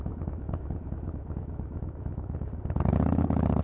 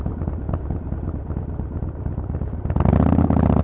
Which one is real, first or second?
second